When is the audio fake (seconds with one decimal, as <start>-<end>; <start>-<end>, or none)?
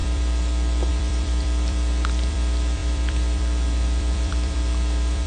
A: 0.0-5.3